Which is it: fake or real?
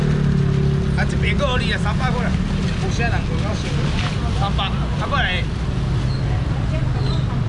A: real